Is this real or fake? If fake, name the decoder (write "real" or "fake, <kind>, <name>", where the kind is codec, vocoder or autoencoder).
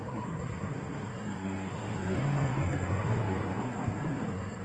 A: fake, codec, SNAC